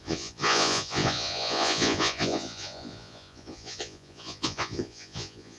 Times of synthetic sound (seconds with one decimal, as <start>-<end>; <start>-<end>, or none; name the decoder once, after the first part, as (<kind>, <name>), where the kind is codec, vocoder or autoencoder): 0.0-5.6 (vocoder, Vocos)